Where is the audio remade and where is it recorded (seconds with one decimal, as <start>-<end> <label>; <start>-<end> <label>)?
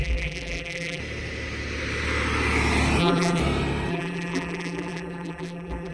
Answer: 0.0-1.0 remade; 1.0-3.0 recorded; 3.0-3.4 remade; 3.4-3.9 recorded; 3.9-5.9 remade